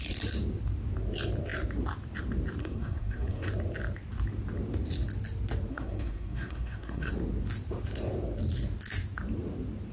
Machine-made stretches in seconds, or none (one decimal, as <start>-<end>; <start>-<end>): 2.6-3.5; 5.7-7.1